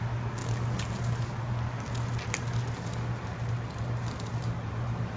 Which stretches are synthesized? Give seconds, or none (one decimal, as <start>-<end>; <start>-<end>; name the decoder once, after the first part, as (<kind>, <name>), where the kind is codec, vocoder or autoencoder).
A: none